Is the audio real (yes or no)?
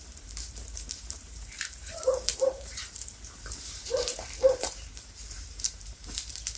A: no